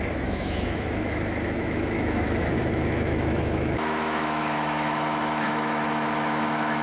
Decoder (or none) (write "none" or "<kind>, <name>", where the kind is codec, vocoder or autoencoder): autoencoder, DAC-VAE